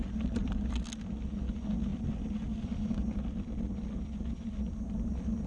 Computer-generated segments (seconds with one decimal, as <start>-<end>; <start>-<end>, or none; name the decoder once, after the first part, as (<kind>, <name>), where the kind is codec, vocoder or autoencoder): 1.9-5.1 (vocoder, BigVGAN v2)